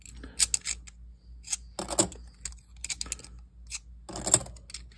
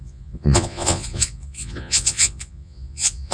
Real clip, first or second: first